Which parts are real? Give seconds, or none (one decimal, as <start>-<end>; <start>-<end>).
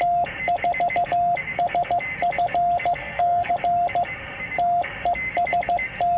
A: 0.0-3.0; 3.5-6.2